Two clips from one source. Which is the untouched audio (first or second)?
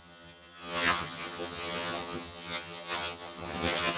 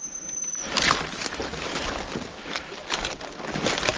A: second